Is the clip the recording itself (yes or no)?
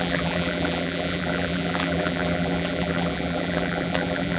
no